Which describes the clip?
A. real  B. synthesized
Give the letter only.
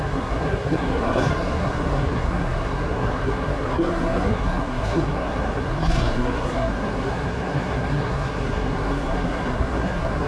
B